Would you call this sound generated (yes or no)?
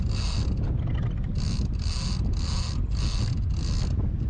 no